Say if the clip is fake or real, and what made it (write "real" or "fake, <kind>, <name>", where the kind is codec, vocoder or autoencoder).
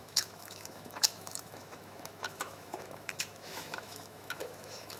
fake, autoencoder, DAC-VAE